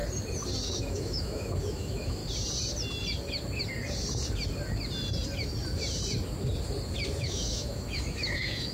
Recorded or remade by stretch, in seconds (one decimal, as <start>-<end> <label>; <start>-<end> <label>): 0.0-0.7 recorded; 0.7-2.2 remade; 2.2-7.2 recorded; 7.2-8.7 remade